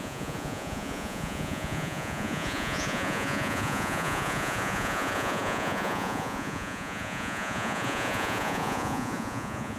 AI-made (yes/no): yes